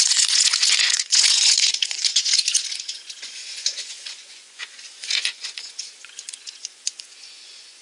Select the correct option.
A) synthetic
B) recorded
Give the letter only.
A